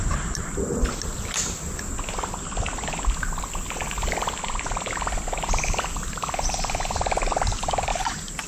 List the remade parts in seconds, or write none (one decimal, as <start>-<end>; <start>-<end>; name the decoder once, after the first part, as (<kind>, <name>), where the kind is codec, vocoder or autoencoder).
none